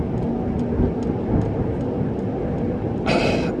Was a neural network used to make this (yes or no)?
no